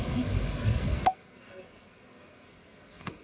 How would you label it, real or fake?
fake